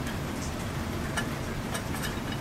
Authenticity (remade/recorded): recorded